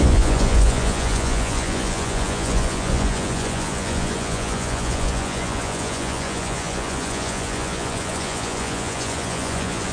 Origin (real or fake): fake